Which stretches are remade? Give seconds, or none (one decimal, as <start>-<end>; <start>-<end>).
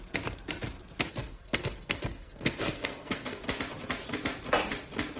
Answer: 1.1-3.4